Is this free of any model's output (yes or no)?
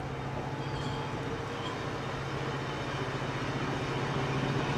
yes